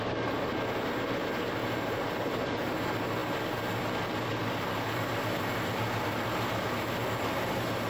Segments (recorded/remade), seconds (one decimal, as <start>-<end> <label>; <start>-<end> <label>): 0.0-1.6 recorded; 1.6-2.3 remade; 2.3-7.9 recorded